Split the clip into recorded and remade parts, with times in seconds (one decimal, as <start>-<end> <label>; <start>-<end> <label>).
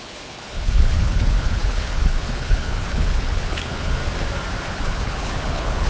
0.0-4.0 remade; 4.0-4.7 recorded; 4.7-5.9 remade